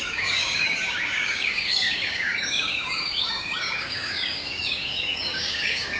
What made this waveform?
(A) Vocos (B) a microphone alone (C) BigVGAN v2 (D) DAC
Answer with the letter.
D